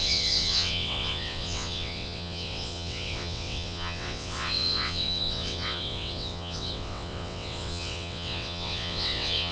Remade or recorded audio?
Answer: remade